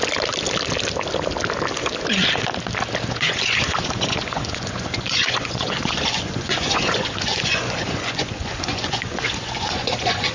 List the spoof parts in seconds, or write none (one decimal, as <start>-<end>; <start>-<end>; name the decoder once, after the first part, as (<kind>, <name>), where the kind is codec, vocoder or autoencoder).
3.1-10.3 (vocoder, Vocos)